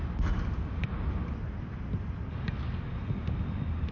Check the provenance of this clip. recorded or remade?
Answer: recorded